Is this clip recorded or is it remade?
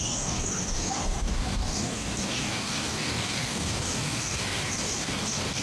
remade